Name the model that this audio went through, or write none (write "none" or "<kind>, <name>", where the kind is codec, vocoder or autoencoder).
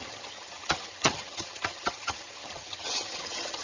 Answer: vocoder, HiFi-GAN